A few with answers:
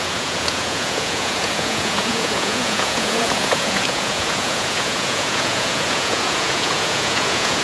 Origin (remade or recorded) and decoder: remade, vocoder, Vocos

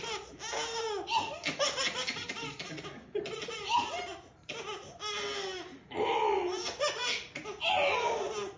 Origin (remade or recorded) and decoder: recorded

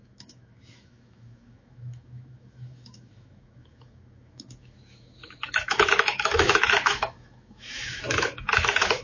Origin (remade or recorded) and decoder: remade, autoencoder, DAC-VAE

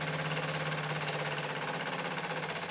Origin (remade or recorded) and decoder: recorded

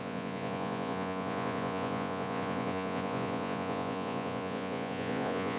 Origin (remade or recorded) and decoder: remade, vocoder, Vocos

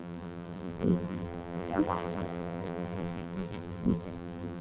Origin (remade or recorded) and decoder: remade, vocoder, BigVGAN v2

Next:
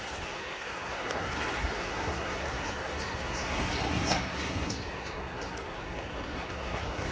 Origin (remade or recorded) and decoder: remade, codec, SNAC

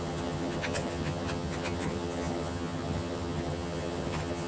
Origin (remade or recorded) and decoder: remade, vocoder, HiFi-GAN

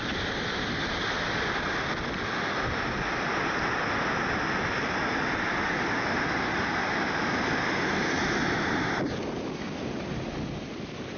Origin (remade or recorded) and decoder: recorded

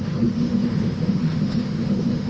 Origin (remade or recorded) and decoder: remade, autoencoder, DAC-VAE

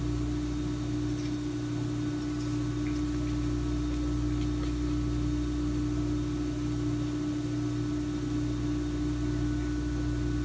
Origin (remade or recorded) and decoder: recorded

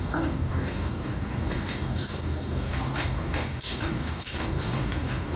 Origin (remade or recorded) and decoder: remade, codec, DAC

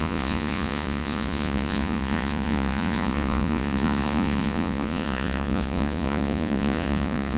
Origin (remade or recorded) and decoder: remade, vocoder, Vocos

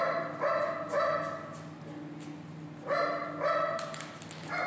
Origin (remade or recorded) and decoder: recorded